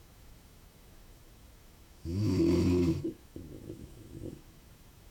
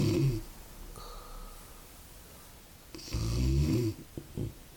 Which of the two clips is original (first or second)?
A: second